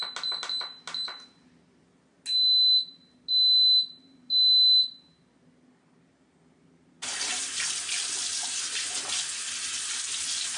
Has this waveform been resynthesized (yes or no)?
no